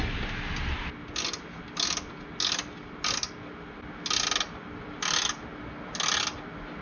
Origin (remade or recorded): recorded